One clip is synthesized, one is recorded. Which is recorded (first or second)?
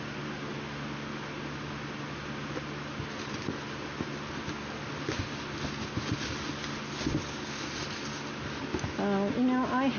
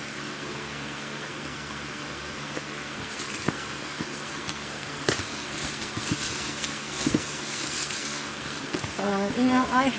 first